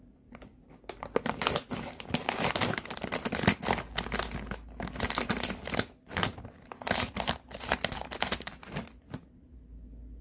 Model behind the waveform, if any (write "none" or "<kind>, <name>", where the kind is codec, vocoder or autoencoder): none